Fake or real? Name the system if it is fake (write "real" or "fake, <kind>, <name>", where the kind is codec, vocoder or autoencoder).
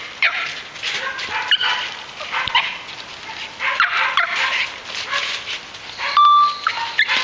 real